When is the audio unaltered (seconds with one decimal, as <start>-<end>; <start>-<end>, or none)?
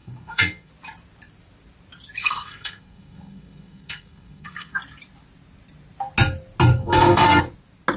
0.7-2.2; 4.8-6.7; 7.4-8.0